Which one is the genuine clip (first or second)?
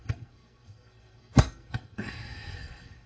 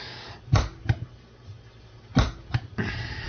second